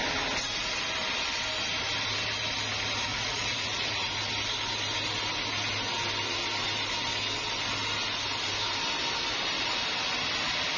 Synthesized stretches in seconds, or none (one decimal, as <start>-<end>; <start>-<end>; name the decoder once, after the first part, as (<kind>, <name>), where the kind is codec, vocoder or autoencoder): 3.1-4.3 (vocoder, Vocos)